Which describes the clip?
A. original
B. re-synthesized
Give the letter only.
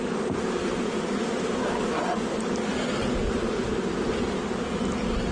A